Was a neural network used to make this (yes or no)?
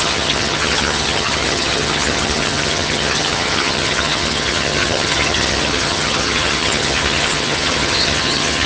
yes